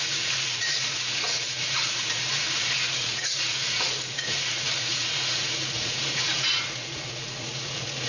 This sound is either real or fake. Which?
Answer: fake